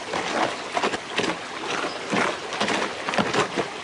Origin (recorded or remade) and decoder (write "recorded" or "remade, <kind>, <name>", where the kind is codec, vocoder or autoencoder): recorded